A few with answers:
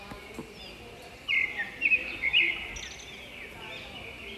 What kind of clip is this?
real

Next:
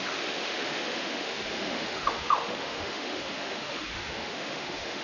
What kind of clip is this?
fake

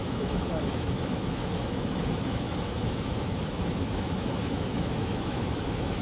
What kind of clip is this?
fake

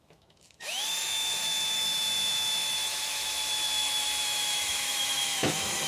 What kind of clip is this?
fake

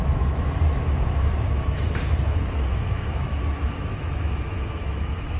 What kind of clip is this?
fake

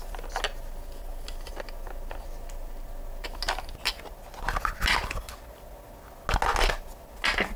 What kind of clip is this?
real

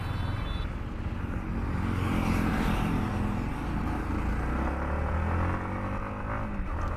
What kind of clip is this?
real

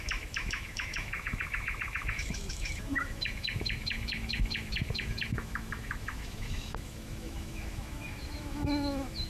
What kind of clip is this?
fake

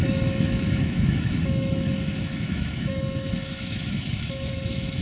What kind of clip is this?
fake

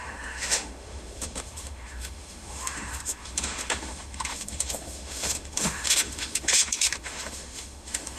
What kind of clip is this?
fake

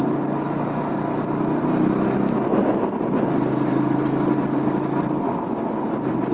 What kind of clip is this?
real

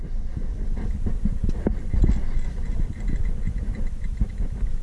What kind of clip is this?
real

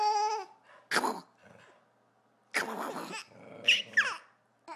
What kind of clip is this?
real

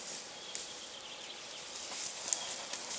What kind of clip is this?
real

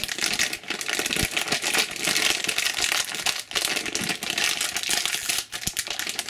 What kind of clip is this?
real